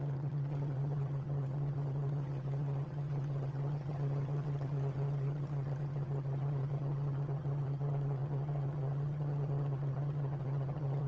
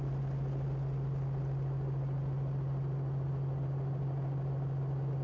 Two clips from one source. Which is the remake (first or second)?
first